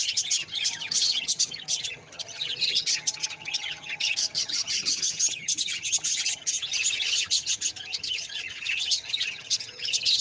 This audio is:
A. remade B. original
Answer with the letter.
A